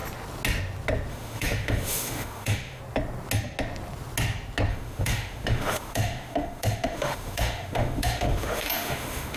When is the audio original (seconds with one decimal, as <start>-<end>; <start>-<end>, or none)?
0.0-1.1; 2.8-4.7